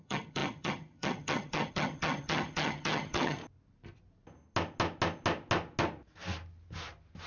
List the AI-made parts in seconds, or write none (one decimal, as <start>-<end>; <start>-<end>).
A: 0.0-3.4